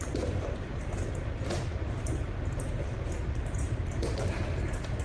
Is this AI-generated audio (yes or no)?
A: yes